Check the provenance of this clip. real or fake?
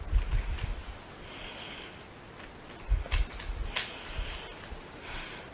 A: real